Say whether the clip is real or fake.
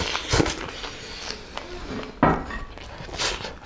real